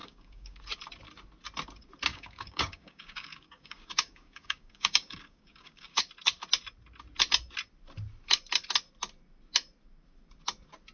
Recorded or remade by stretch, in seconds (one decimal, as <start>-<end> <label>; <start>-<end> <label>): 0.0-0.6 remade; 0.6-2.1 recorded; 2.1-6.0 remade; 6.0-10.9 recorded

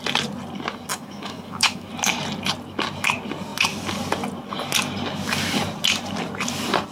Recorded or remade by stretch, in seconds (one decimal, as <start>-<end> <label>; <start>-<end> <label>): 0.0-0.9 recorded; 0.9-1.9 remade; 1.9-6.9 recorded

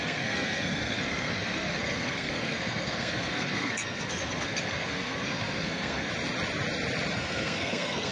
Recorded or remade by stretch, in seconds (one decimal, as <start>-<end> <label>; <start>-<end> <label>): 0.0-6.1 remade; 6.1-7.1 recorded; 7.1-8.1 remade

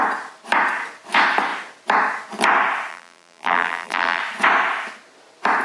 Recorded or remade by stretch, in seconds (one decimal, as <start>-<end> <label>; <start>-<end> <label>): 0.0-2.9 recorded; 2.9-4.2 remade; 4.2-5.6 recorded